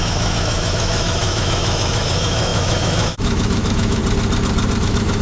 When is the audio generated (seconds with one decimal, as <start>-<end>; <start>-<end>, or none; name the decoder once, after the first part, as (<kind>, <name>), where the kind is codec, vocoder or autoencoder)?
0.0-4.0 (autoencoder, DAC-VAE); 4.8-5.2